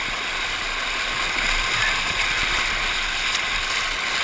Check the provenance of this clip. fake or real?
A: real